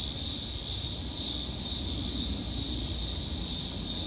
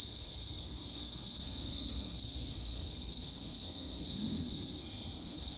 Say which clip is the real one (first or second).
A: first